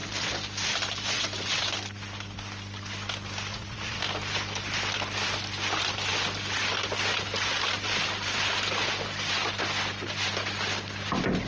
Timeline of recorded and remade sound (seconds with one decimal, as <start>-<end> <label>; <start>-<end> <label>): 0.0-3.5 recorded; 3.5-4.0 remade; 4.0-11.5 recorded